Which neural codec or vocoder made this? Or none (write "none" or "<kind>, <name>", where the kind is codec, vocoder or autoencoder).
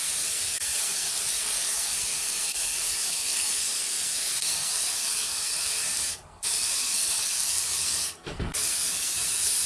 codec, SNAC